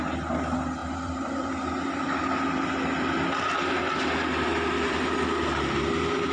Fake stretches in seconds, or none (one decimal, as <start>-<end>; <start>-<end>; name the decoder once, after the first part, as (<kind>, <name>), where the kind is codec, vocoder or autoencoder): 0.8-3.6 (vocoder, BigVGAN v2); 4.5-5.0